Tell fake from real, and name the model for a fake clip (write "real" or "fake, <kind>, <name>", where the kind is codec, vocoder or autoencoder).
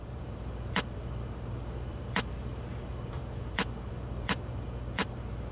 fake, vocoder, BigVGAN v2